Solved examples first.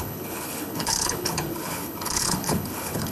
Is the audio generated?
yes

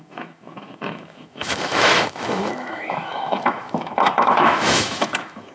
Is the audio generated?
yes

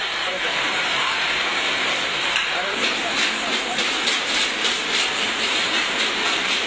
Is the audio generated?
yes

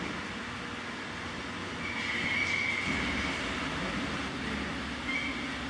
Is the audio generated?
no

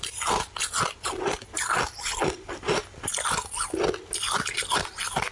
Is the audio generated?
no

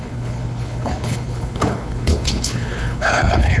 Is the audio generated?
yes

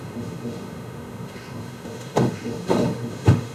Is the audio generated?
yes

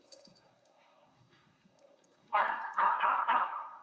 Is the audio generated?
yes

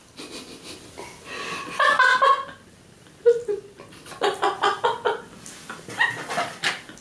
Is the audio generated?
no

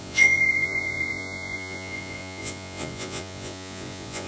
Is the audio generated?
yes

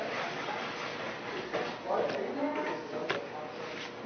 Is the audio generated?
no